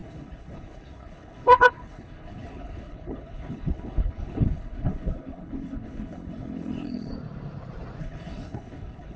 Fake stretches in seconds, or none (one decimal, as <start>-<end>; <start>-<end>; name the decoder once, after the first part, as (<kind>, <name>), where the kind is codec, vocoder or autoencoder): 0.0-7.1 (codec, HILCodec); 8.0-9.2